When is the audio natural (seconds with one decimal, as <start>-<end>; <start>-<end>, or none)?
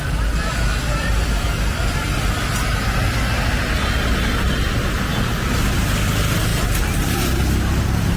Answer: 0.0-8.2